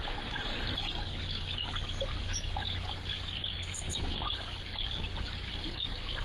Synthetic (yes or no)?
yes